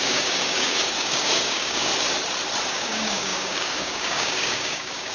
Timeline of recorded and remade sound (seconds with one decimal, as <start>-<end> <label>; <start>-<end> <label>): 0.0-1.9 remade; 1.9-2.7 recorded; 2.7-5.1 remade